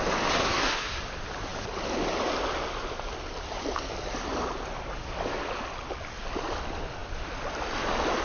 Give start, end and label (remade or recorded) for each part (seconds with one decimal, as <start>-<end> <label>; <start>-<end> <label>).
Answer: 0.0-0.4 recorded; 0.4-1.0 remade; 1.0-8.2 recorded